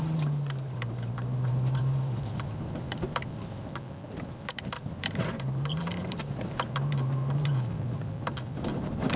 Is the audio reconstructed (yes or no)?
yes